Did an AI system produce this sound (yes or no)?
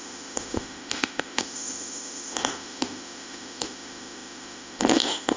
yes